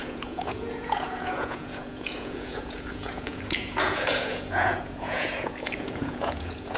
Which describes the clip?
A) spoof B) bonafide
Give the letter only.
A